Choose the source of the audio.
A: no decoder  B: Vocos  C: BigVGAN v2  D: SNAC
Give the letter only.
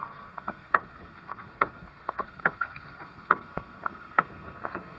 D